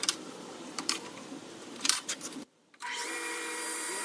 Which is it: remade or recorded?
remade